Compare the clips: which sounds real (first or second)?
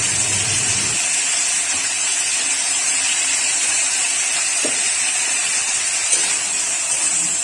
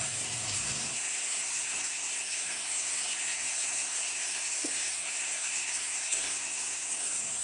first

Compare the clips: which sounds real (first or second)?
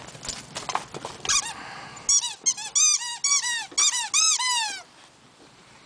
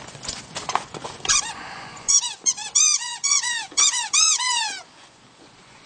first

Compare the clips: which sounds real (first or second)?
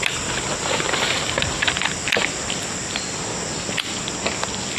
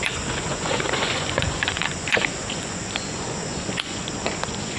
first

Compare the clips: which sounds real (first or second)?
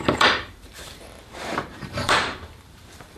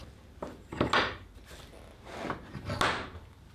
second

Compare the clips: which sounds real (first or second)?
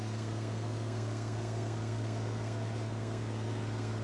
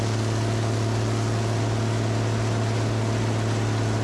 second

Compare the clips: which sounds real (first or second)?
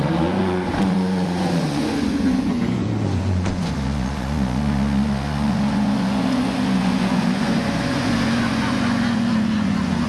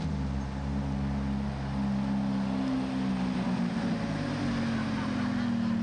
second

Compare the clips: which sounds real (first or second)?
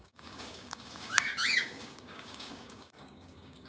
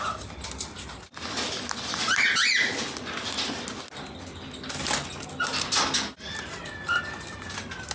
second